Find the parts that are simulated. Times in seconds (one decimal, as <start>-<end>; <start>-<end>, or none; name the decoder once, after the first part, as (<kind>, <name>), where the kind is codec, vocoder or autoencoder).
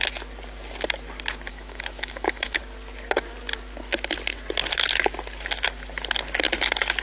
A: 1.5-2.6 (autoencoder, DAC-VAE)